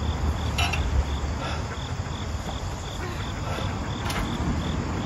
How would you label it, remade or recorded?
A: recorded